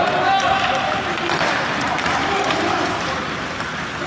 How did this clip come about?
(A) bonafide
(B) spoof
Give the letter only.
A